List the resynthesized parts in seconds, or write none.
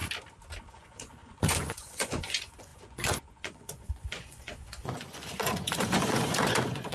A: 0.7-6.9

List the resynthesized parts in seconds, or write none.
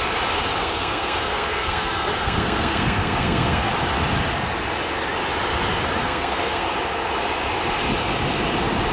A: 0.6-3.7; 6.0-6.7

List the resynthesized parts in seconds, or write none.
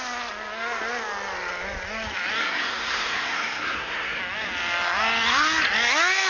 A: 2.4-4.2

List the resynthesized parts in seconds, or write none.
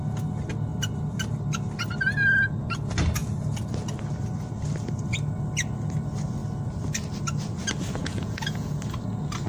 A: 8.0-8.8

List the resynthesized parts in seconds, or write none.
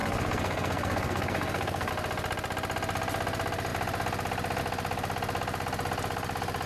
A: 0.0-1.9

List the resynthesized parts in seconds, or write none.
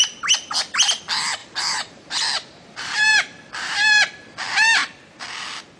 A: 1.4-3.5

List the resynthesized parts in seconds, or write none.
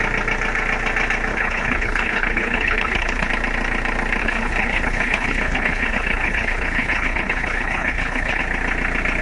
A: 1.3-3.3; 4.2-8.4